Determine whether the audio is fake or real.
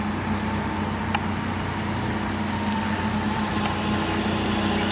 real